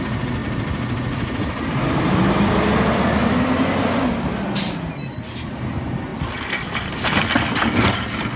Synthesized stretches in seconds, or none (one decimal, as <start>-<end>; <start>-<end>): 0.4-2.2; 3.2-3.8; 6.1-6.9